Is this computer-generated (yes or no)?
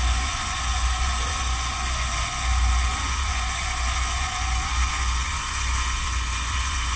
yes